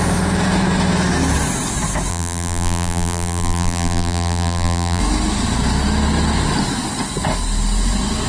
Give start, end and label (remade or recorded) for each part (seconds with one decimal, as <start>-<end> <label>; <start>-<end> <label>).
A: 0.0-2.1 recorded; 2.1-5.0 remade; 5.0-8.3 recorded